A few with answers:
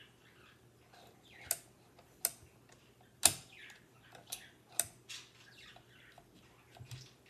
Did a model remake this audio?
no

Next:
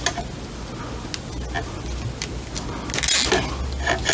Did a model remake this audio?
no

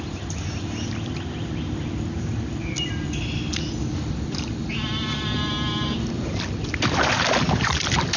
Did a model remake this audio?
no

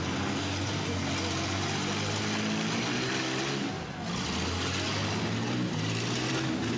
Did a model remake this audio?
no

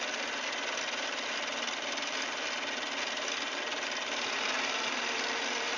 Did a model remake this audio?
yes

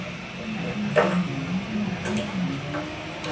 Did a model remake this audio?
no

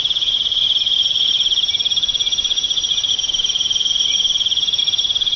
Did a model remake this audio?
yes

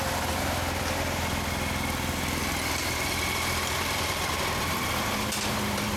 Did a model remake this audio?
no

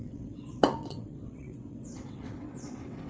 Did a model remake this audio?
yes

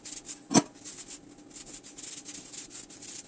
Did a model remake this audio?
no